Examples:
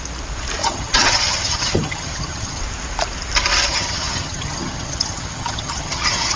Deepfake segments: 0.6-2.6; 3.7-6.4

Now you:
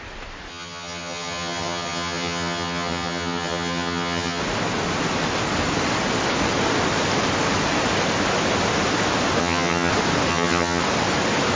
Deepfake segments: 0.5-4.4; 9.4-9.9; 10.3-10.8

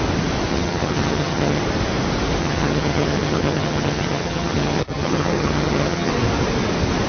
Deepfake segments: 0.5-1.6; 2.4-6.1

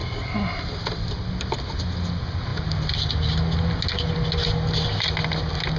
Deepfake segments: none

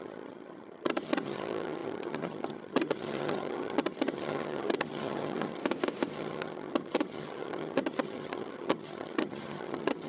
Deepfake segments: 0.0-5.6; 6.1-10.1

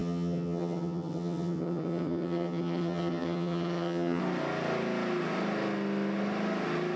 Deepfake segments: 0.0-4.2

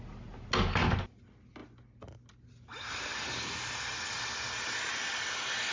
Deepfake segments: none